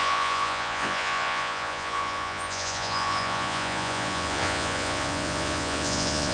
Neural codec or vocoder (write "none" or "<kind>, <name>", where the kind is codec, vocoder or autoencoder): vocoder, Vocos